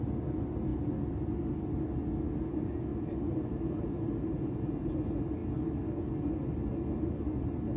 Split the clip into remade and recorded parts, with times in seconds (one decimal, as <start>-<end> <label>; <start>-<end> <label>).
0.0-2.9 recorded; 2.9-5.0 remade; 5.0-7.8 recorded